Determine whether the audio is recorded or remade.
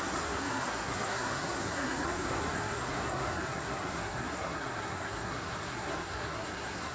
remade